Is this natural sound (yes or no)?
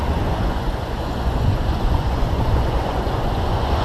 no